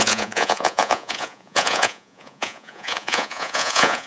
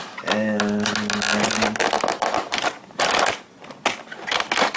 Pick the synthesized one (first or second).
first